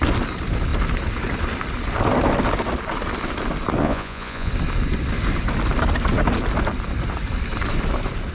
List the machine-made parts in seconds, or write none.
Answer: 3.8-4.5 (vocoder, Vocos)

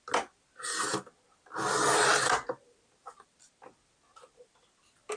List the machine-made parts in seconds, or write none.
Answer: none